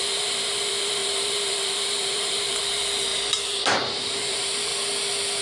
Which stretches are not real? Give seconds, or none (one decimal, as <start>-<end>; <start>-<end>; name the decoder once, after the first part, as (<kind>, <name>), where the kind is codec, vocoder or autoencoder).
0.0-4.7 (vocoder, BigVGAN v2)